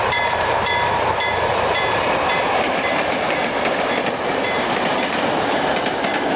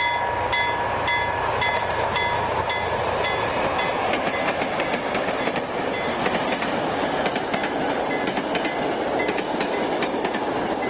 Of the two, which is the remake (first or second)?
first